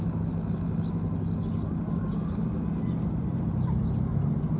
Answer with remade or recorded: recorded